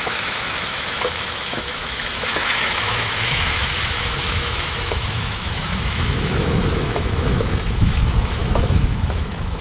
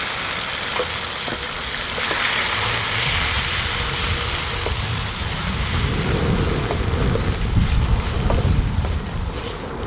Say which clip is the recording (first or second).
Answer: second